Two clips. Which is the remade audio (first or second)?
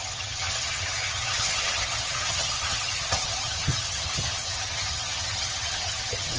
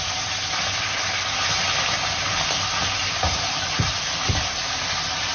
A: first